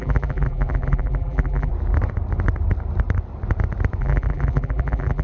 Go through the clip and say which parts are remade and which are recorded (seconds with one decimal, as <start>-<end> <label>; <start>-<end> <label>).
0.0-1.7 remade; 1.7-4.0 recorded; 4.0-5.2 remade